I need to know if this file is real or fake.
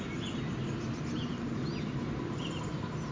real